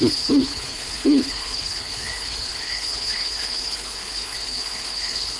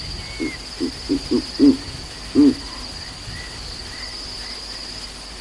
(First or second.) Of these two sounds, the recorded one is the second